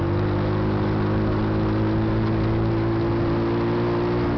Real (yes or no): yes